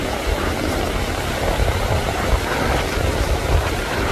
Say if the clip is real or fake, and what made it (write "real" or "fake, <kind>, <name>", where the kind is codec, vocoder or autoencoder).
real